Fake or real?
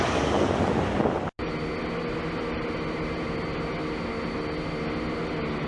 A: real